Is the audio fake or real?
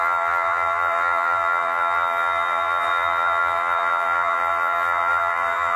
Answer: fake